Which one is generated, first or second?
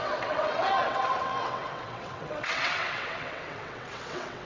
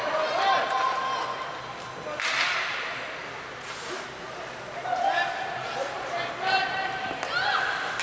first